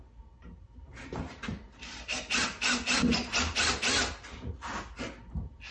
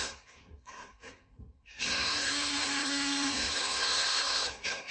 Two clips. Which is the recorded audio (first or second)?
first